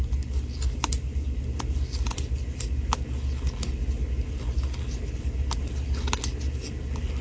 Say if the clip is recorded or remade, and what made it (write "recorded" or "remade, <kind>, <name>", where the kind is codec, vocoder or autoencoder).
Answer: recorded